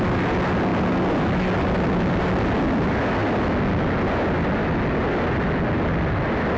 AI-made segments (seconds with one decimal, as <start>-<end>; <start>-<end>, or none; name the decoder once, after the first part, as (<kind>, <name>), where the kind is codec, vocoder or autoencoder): none